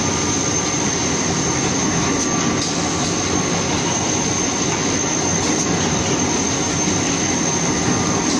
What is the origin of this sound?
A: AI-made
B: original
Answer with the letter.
B